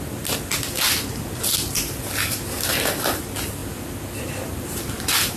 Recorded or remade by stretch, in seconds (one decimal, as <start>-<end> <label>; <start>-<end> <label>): 0.0-5.4 recorded